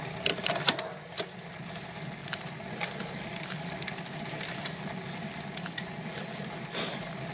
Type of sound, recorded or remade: recorded